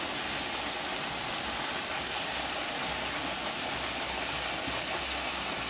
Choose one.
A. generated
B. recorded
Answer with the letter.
B